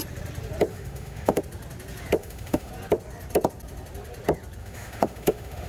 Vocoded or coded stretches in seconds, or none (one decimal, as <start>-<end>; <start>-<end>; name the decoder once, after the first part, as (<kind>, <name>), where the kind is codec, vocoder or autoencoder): 0.7-1.4 (autoencoder, DAC-VAE); 2.2-2.7; 4.6-5.7